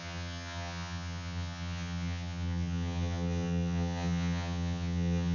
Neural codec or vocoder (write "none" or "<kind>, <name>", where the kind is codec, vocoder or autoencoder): vocoder, HiFi-GAN